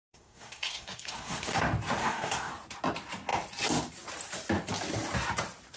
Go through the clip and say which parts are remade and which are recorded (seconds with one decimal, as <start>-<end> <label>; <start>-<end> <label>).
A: 0.0-1.6 remade; 1.6-2.0 recorded; 2.0-2.5 remade; 2.5-5.8 recorded